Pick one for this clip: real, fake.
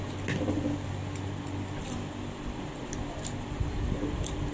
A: real